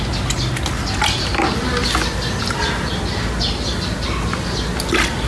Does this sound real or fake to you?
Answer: real